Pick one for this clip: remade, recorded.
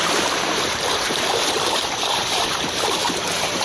remade